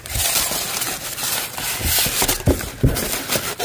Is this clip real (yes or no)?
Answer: no